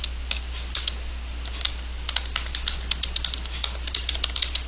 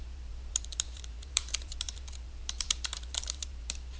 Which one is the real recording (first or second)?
first